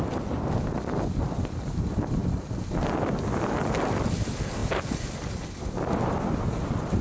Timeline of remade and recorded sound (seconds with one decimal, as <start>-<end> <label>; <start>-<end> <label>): 0.0-7.0 recorded